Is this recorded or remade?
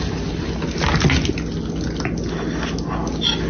recorded